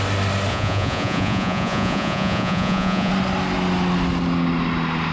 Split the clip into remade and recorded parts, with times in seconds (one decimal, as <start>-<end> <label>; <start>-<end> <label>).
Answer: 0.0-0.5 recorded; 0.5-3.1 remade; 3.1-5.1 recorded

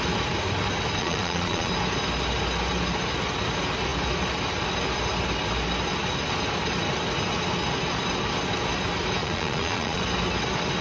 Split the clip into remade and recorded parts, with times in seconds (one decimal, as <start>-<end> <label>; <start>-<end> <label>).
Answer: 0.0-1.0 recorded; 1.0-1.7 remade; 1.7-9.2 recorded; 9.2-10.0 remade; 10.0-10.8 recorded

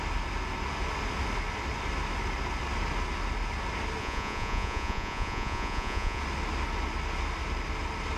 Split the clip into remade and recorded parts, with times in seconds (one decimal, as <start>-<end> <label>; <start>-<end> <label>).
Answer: 0.0-4.0 recorded; 4.0-6.2 remade; 6.2-8.2 recorded